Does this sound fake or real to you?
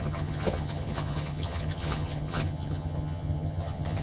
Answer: fake